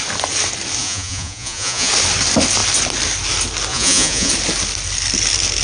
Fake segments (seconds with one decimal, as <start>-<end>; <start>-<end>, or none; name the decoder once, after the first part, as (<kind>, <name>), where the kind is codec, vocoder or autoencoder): 0.8-1.9 (vocoder, Vocos); 3.7-4.3